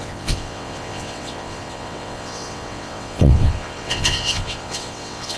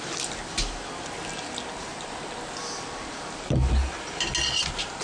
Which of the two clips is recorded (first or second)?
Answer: second